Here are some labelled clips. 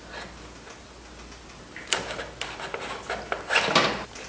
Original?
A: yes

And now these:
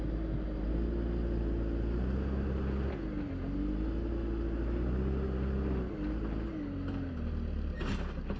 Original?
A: yes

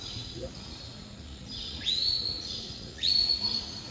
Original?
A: no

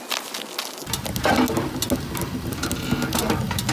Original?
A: yes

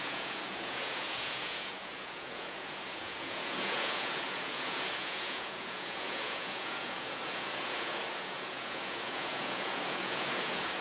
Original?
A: no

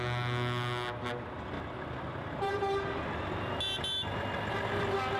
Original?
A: yes